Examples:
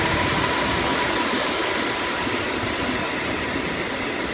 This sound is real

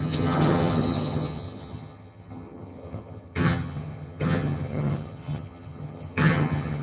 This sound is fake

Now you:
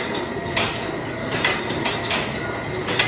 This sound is real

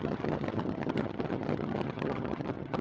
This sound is fake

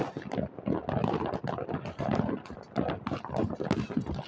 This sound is real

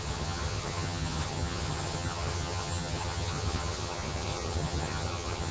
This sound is fake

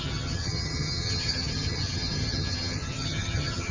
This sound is fake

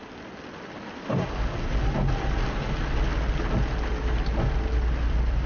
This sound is real